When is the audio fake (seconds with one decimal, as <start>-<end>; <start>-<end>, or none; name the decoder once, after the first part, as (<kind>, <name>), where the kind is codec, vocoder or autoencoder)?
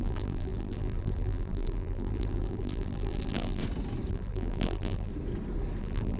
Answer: 0.0-3.6 (vocoder, BigVGAN v2); 4.1-5.1; 5.8-6.2